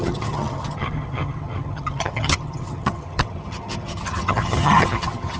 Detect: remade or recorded remade